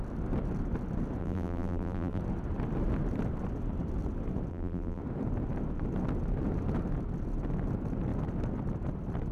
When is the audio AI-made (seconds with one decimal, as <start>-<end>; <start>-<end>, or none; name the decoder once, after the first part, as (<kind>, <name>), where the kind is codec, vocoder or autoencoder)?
1.2-2.2 (vocoder, BigVGAN v2); 4.5-5.0